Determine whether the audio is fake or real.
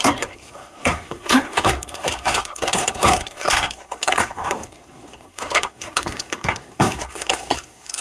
fake